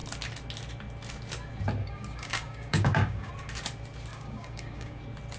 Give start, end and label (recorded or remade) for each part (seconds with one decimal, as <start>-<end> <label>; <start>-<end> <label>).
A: 0.0-1.8 recorded; 1.8-3.3 remade; 3.3-4.1 recorded; 4.1-5.0 remade; 5.0-5.4 recorded